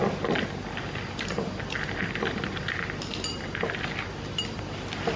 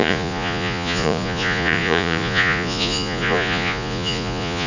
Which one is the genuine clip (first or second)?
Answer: first